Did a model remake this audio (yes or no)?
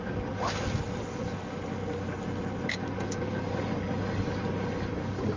no